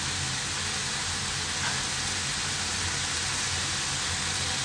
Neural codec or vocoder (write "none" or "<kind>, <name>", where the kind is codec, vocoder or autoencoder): none